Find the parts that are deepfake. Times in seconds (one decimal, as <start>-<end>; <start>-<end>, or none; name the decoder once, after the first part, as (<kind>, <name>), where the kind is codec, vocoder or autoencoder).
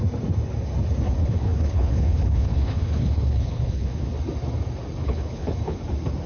1.2-4.1 (codec, HILCodec); 5.0-5.8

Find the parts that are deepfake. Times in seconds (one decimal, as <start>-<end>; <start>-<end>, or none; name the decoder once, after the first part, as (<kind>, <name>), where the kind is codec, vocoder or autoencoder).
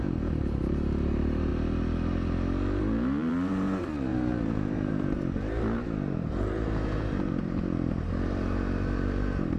0.0-1.5 (vocoder, BigVGAN v2); 2.8-9.6